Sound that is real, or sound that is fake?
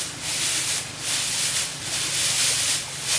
real